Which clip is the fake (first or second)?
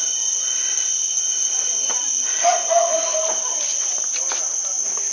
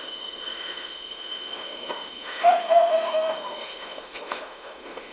second